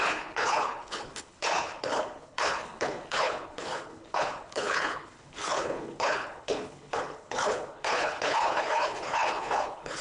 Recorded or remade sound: remade